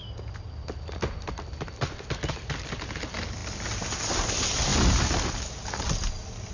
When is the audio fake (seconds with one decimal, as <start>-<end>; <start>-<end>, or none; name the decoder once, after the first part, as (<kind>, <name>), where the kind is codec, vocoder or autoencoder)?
none